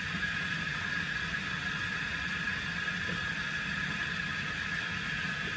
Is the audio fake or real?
real